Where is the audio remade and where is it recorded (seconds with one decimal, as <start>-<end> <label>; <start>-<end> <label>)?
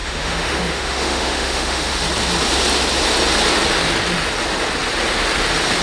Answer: 0.0-2.0 remade; 2.0-5.8 recorded